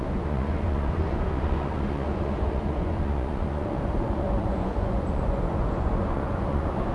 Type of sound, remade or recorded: remade